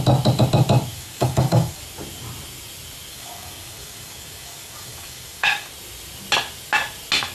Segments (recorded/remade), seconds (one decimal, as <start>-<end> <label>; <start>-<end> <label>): 0.0-0.9 recorded; 0.9-1.8 remade; 1.8-3.1 recorded; 3.1-5.7 remade; 5.7-7.3 recorded